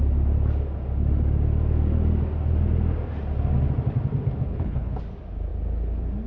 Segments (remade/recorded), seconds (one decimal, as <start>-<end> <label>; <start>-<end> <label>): 0.0-4.5 recorded; 4.5-5.0 remade; 5.0-6.3 recorded